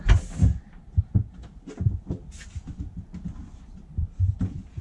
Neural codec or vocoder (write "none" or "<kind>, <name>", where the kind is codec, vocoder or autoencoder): none